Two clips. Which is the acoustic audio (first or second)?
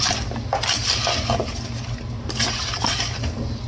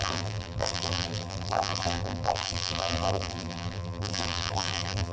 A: first